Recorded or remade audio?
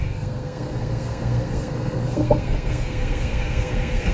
remade